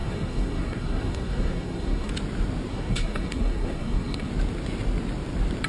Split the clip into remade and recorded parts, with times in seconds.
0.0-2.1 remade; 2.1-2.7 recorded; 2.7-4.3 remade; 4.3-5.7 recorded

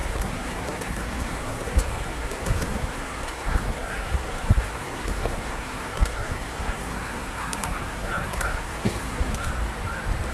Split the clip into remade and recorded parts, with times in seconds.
0.0-9.5 remade; 9.5-10.3 recorded

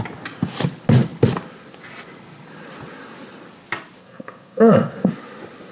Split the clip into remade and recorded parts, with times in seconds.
0.0-4.0 recorded; 4.0-5.1 remade; 5.1-5.7 recorded